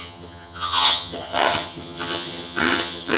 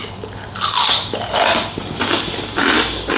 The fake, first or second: first